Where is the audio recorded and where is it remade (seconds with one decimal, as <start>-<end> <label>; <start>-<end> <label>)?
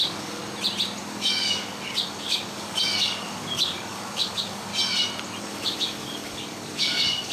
0.0-0.4 remade; 0.4-1.0 recorded; 1.0-4.7 remade; 4.7-5.4 recorded; 5.4-7.3 remade